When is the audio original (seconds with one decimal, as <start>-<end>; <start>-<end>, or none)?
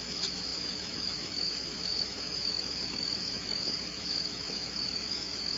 none